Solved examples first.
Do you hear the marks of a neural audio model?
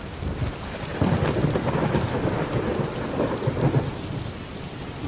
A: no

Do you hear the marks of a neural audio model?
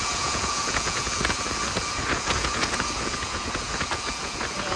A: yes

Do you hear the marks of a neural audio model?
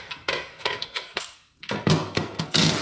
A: yes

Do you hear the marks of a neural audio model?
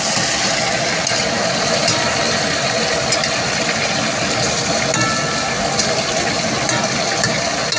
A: no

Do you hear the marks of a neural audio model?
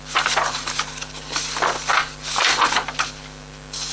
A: no